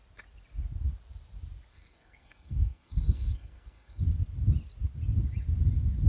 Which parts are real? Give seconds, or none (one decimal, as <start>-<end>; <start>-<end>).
0.0-1.7; 4.0-6.1